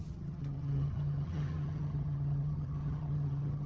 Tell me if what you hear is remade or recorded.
remade